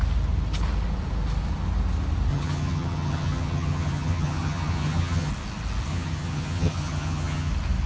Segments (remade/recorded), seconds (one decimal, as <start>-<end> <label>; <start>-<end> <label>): 0.0-2.3 recorded; 2.3-5.3 remade; 5.3-5.9 recorded; 5.9-7.5 remade; 7.5-7.9 recorded